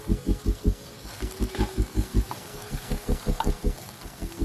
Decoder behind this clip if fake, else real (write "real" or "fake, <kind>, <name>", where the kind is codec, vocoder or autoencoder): fake, codec, SNAC